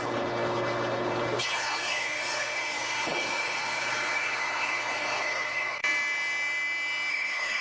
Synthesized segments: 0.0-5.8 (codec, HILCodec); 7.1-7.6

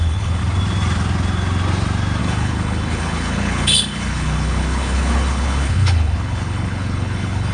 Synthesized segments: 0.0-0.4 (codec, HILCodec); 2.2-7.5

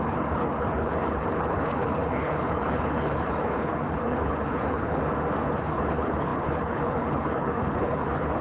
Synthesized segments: 0.0-5.0 (codec, HILCodec); 5.6-8.4

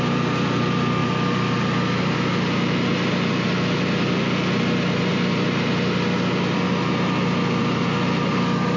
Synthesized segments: none

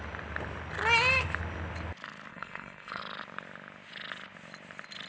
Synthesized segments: 2.3-3.0 (codec, HILCodec)